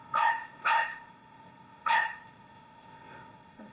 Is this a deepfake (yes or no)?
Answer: yes